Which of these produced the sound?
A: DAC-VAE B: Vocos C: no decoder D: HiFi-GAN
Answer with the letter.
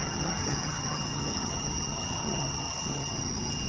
D